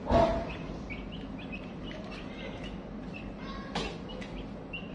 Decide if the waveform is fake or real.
real